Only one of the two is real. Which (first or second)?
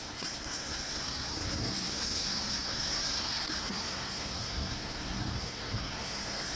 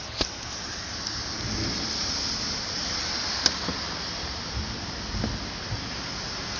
second